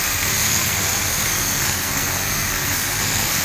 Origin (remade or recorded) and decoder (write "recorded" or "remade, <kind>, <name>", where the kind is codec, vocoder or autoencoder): remade, codec, SNAC